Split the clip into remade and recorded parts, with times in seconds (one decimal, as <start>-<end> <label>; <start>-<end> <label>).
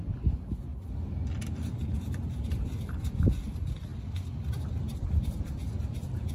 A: 0.0-6.3 recorded